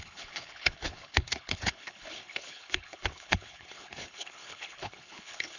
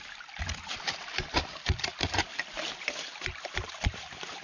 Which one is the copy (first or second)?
first